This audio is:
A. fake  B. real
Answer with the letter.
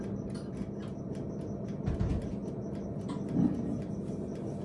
B